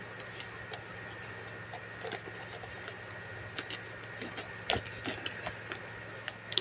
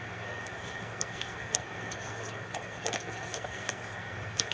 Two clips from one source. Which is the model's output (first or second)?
second